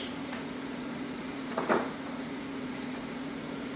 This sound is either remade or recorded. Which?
remade